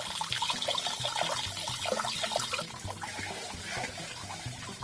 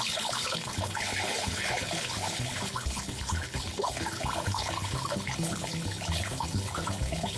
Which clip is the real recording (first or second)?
first